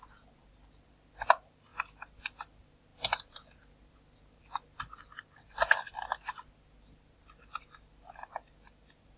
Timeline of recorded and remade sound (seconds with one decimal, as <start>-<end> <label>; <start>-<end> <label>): 0.0-9.2 recorded